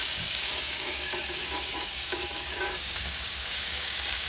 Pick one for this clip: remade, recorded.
remade